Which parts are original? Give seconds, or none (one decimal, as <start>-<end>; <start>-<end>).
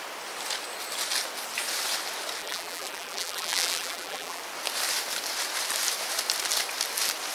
0.0-2.4; 4.4-7.3